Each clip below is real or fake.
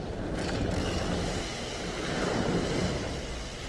real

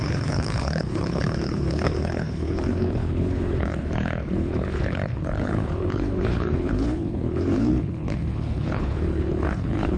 fake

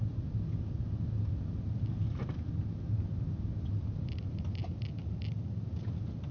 real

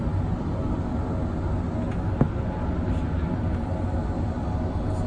real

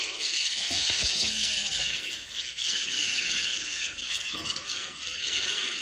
fake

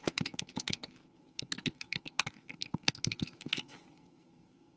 fake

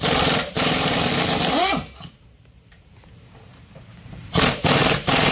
fake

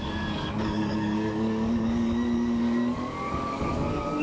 fake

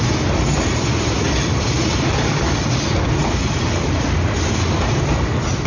real